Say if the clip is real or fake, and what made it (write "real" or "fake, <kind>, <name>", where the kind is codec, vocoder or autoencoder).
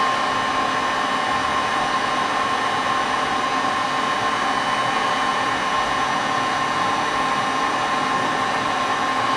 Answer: real